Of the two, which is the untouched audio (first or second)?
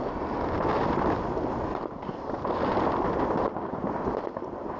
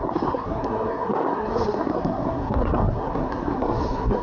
first